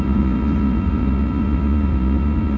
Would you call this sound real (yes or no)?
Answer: no